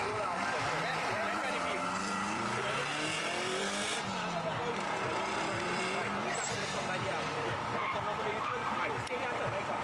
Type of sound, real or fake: fake